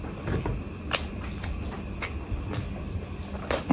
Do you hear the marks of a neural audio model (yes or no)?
no